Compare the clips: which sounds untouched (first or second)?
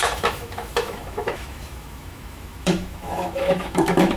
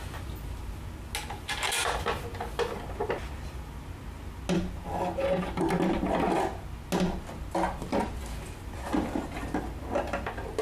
second